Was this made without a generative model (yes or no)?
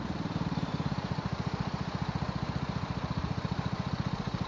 no